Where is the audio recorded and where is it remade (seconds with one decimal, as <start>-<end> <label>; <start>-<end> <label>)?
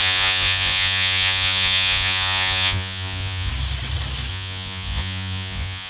0.0-3.5 remade; 3.5-4.3 recorded; 4.3-5.9 remade